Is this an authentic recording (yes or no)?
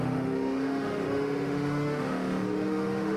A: no